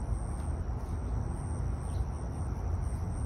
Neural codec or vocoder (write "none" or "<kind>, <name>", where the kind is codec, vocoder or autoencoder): none